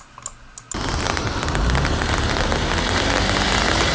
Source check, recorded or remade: recorded